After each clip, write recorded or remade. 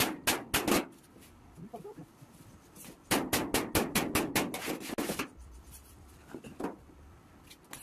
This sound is recorded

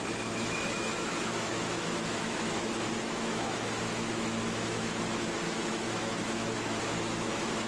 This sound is remade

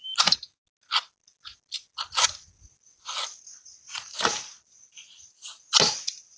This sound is recorded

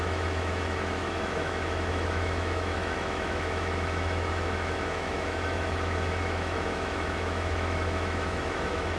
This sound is remade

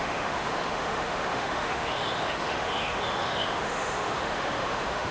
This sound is remade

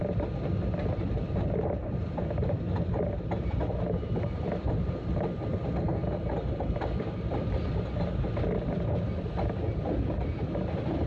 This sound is recorded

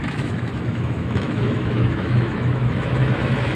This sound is remade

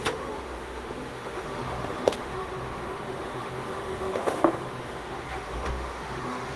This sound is remade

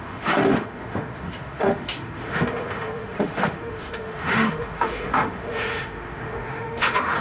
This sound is remade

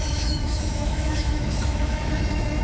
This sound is remade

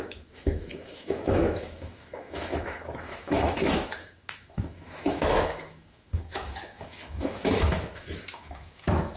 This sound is remade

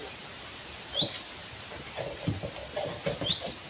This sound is recorded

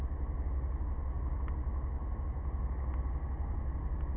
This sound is recorded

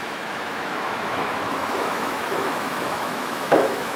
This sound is remade